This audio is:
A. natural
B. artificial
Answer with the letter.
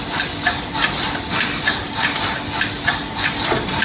A